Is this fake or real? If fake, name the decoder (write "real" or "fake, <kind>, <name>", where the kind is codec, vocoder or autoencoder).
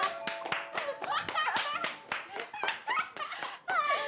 real